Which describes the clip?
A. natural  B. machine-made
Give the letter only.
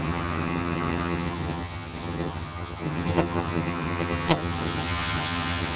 B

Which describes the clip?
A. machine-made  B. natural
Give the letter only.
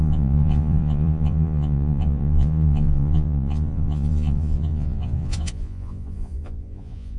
A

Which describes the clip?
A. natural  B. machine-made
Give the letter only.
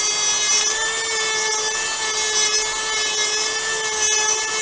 A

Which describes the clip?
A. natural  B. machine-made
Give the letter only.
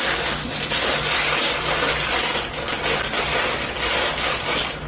A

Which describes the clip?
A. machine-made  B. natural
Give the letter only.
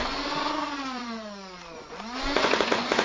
A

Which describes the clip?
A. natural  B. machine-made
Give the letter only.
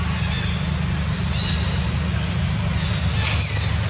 A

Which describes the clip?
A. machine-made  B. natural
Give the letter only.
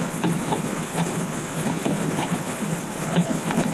A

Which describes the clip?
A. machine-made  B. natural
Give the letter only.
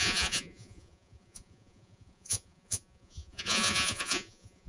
A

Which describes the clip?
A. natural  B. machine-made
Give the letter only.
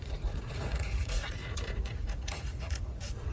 B